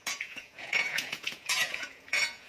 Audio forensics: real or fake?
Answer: fake